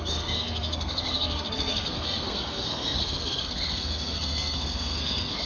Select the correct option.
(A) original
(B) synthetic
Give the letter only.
B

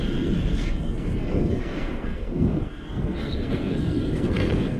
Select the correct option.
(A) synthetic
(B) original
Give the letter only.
A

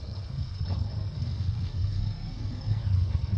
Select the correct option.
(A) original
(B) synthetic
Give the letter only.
B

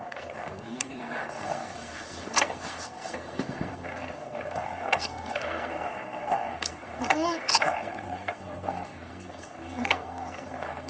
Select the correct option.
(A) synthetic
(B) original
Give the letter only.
A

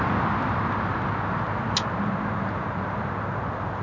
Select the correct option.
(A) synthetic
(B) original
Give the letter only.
B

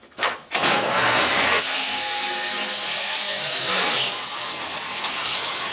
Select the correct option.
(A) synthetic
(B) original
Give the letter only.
A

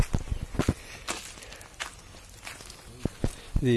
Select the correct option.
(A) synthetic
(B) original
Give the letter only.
B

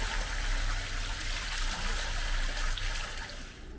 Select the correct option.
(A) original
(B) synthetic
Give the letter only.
A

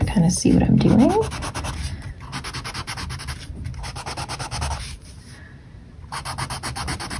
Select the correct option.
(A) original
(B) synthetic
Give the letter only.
A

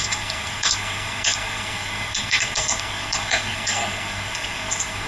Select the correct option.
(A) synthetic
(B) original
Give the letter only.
A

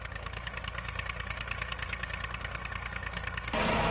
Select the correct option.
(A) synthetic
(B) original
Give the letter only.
B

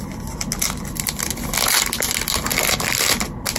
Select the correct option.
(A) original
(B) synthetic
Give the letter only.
A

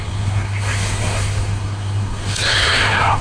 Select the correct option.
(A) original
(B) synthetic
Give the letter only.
B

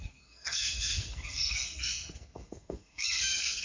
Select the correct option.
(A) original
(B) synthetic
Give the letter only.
B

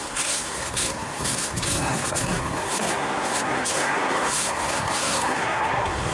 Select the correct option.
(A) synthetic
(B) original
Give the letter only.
A